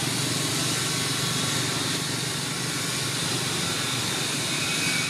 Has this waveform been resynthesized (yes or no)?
yes